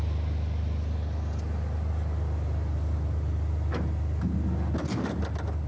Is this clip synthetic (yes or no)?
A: no